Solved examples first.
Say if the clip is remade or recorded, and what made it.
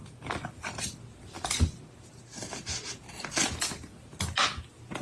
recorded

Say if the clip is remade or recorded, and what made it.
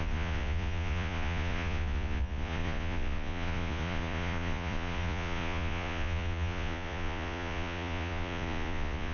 remade, vocoder, Vocos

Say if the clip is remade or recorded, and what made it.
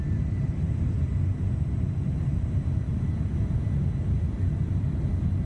recorded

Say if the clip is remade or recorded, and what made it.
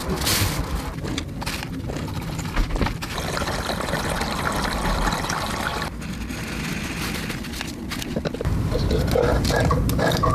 recorded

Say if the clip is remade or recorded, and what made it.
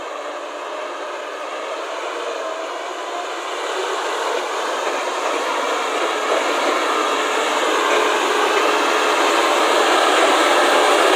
recorded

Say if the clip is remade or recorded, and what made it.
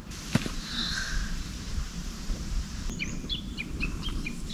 remade, vocoder, BigVGAN v2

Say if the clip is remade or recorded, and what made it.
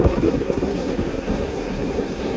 remade, codec, SNAC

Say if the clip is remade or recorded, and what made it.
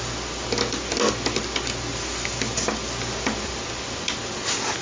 recorded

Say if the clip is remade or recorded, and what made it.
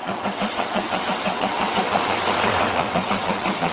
remade, vocoder, WaveNeXt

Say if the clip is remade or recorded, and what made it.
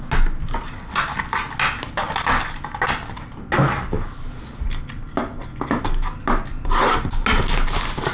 recorded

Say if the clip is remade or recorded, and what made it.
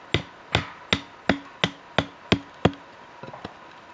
recorded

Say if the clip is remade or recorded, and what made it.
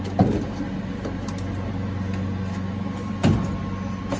recorded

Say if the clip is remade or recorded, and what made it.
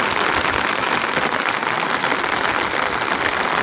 recorded